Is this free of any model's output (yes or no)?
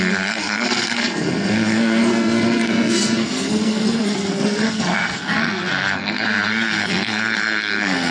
no